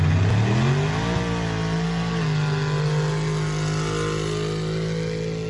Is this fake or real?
real